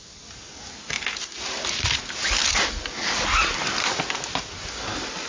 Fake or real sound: real